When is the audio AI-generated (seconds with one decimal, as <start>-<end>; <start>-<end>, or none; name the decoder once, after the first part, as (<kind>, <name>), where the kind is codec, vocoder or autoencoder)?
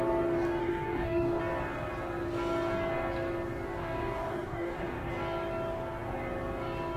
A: 0.6-1.4 (codec, DAC); 3.8-5.1